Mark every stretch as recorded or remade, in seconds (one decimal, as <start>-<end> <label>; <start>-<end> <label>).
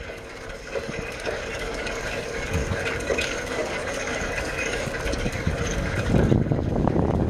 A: 0.0-7.3 remade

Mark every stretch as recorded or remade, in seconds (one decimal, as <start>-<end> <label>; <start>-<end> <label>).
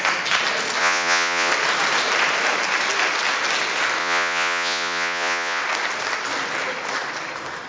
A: 0.0-0.8 recorded; 0.8-1.5 remade; 1.5-4.0 recorded; 4.0-5.6 remade; 5.6-7.7 recorded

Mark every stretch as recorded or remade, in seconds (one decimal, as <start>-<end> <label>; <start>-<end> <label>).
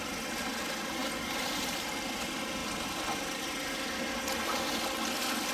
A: 0.0-5.5 recorded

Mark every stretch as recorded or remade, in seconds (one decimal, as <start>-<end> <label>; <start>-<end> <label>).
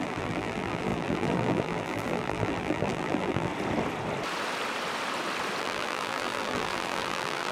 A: 0.0-3.5 remade; 3.5-5.6 recorded; 5.6-7.5 remade